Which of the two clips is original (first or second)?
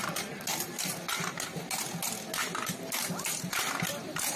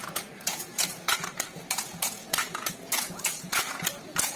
first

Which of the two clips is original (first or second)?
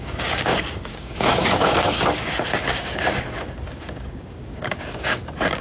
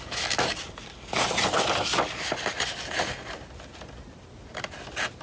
second